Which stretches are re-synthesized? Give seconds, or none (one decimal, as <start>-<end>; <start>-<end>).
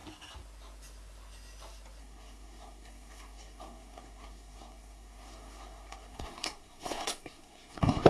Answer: 2.0-8.1